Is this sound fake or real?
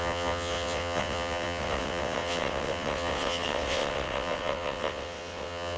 fake